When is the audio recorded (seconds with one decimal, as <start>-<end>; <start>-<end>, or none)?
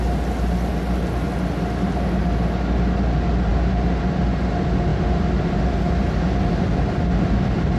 0.0-4.9; 5.9-7.8